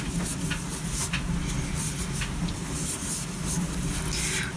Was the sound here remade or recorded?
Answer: recorded